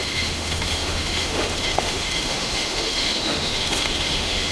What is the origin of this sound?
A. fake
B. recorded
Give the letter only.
A